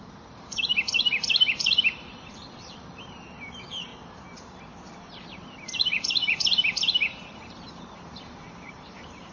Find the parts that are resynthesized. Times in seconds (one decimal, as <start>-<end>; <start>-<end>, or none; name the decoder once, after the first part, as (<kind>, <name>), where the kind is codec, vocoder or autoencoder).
0.0-3.9 (vocoder, BigVGAN v2); 4.9-9.3